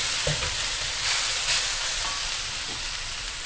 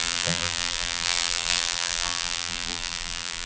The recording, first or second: first